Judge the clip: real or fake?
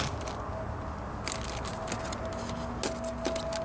real